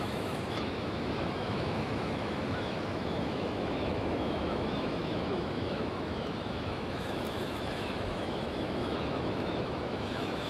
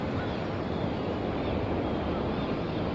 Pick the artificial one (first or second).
first